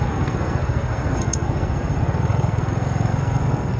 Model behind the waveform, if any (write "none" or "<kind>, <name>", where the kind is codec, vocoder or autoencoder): codec, SNAC